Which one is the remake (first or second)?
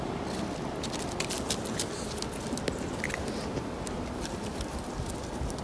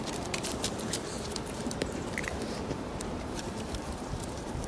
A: second